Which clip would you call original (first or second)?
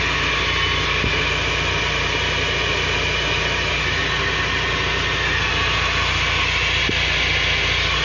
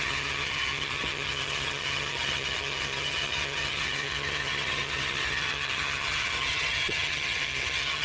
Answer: first